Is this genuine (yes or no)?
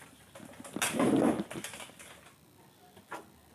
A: yes